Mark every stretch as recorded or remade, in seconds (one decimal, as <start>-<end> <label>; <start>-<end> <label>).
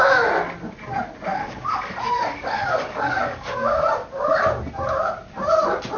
0.0-1.3 recorded; 1.3-3.8 remade; 3.8-6.0 recorded